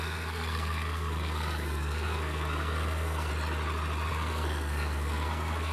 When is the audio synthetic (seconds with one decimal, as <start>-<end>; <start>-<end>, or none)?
0.0-3.3; 4.1-5.7